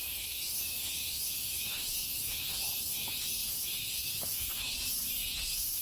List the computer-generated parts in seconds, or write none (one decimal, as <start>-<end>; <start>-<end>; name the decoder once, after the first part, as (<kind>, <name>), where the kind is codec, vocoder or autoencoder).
0.0-4.7 (autoencoder, DAC-VAE); 5.3-5.8